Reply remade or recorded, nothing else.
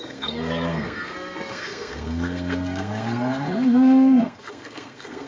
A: remade